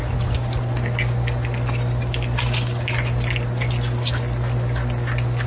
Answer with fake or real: real